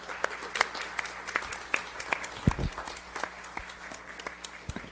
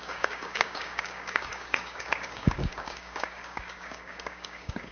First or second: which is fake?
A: second